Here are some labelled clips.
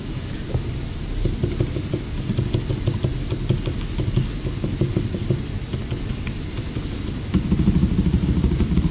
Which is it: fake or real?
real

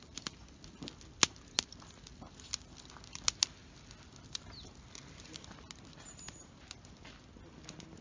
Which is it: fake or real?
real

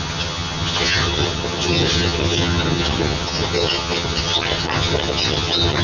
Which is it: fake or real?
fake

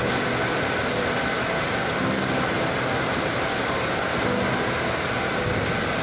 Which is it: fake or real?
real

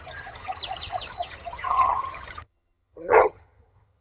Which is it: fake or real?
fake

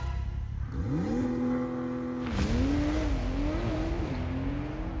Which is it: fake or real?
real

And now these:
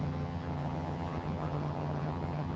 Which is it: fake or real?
fake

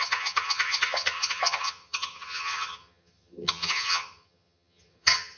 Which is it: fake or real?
fake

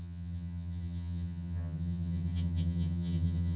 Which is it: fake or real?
fake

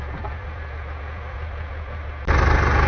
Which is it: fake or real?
real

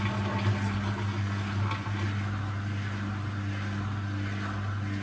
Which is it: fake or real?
real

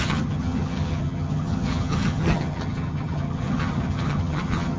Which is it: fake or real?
fake